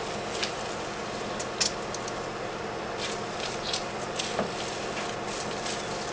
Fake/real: real